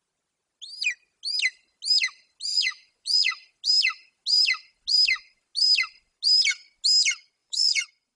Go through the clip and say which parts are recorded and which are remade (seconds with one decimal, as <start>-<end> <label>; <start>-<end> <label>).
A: 0.0-2.5 recorded; 2.5-3.6 remade; 3.6-7.4 recorded; 7.4-8.2 remade